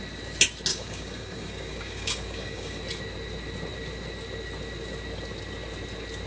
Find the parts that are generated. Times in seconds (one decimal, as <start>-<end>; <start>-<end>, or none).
0.7-2.8